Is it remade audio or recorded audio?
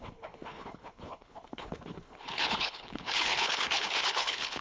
remade